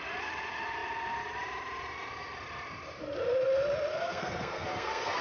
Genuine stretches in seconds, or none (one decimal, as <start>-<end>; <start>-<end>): 0.0-3.9